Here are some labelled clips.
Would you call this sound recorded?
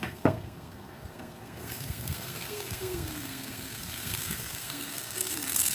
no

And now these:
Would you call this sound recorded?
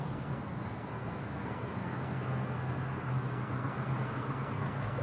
no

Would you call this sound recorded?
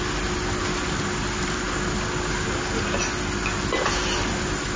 yes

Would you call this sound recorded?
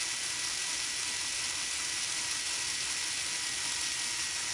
yes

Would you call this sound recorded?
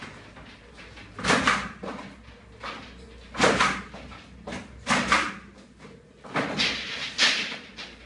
yes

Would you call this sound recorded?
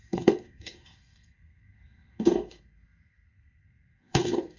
no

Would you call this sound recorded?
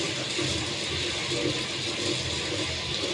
yes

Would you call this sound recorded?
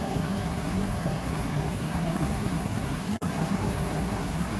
no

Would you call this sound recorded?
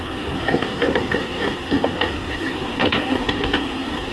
no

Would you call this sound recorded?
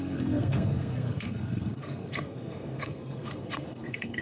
no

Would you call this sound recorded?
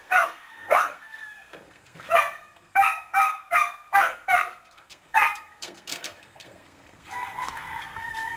no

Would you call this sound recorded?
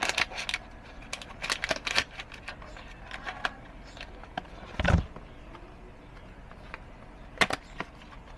yes